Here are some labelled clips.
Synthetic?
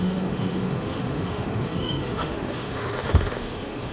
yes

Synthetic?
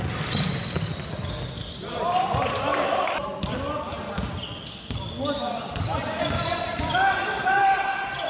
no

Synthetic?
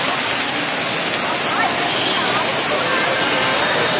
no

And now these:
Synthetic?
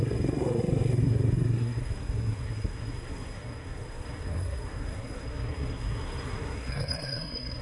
yes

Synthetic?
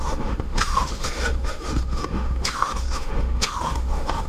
yes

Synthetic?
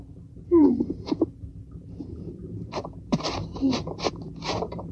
yes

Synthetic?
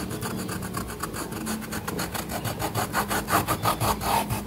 no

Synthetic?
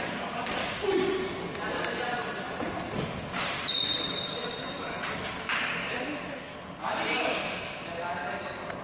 no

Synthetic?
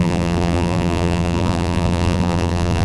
yes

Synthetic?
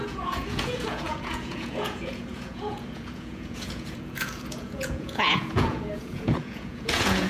yes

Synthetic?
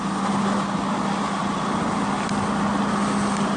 no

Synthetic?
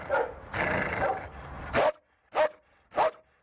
no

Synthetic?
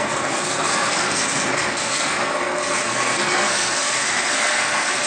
yes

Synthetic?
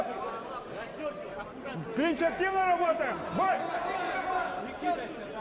no